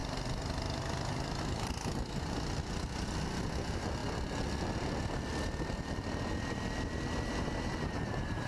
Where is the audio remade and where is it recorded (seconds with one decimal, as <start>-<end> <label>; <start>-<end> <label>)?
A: 0.0-8.5 recorded